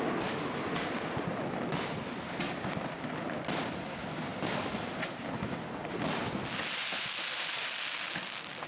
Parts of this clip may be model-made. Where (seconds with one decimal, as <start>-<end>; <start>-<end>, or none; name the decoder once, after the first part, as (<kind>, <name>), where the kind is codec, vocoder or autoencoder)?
none

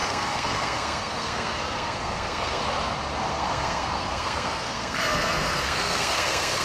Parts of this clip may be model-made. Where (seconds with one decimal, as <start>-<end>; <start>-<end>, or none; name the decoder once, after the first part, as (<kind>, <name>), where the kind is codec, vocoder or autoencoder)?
0.0-2.6 (codec, SNAC); 3.3-6.6

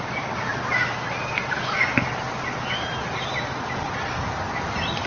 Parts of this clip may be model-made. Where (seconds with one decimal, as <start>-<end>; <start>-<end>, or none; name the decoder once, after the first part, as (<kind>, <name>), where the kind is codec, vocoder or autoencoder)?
none

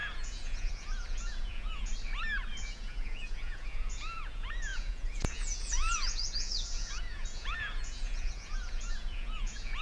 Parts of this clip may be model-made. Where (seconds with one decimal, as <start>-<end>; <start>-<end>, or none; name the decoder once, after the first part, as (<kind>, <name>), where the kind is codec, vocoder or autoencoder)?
0.0-1.9 (vocoder, Vocos); 2.5-9.8